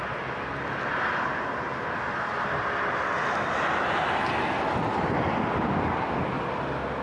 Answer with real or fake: real